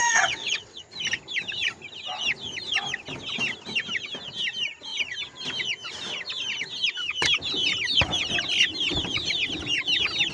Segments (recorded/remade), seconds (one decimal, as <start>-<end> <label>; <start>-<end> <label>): 0.0-0.8 remade; 0.8-10.3 recorded